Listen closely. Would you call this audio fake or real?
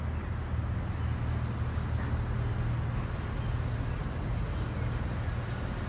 real